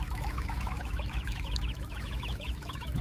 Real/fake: fake